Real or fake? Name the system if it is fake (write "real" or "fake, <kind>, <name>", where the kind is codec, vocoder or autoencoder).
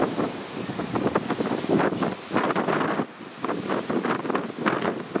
real